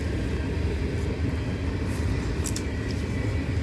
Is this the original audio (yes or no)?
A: yes